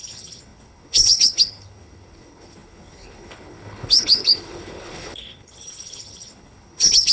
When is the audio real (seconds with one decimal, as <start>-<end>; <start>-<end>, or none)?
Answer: none